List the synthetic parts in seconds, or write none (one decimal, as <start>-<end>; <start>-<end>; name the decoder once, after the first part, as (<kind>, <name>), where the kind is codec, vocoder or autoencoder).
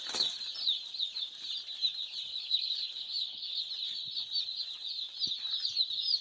2.3-3.6 (codec, HILCodec)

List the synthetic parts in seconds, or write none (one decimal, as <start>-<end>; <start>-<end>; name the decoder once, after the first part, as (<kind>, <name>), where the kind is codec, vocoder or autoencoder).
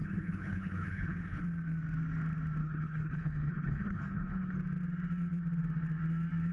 0.0-1.4 (codec, HILCodec); 2.6-4.5